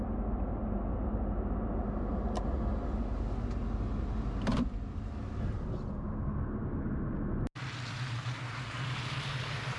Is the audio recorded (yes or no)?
yes